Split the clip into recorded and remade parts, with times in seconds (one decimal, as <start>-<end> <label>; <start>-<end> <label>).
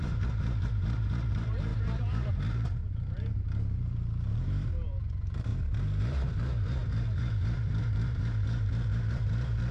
0.0-5.5 remade; 5.5-6.0 recorded; 6.0-9.7 remade